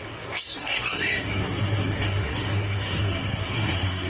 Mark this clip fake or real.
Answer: fake